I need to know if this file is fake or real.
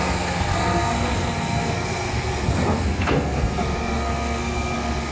fake